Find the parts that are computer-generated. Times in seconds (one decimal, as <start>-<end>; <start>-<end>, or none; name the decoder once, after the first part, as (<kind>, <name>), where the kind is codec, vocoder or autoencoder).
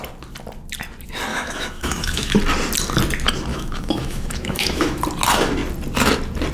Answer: 1.3-2.4 (autoencoder, DAC-VAE); 3.5-5.0